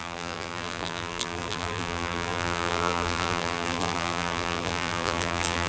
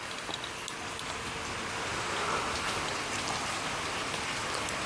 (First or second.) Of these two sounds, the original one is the second